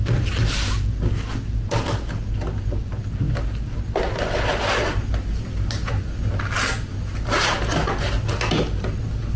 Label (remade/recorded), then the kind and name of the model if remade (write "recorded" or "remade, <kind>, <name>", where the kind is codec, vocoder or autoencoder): recorded